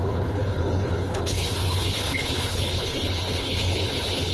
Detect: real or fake fake